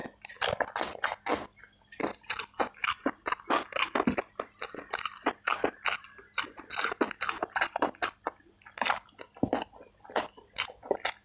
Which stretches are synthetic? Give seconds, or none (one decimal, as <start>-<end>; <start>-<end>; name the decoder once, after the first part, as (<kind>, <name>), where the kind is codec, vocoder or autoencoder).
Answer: 1.8-5.5 (vocoder, BigVGAN v2); 6.4-11.2